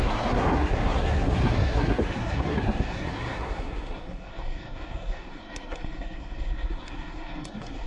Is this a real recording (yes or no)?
no